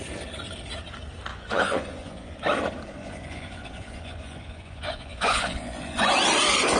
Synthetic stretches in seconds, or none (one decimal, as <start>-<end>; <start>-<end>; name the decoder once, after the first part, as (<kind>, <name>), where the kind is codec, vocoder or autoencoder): 1.3-2.4 (vocoder, Vocos); 3.0-6.1